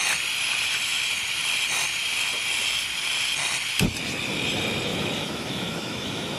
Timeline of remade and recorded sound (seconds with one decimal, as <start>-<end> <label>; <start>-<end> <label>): 0.0-4.9 recorded; 4.9-6.4 remade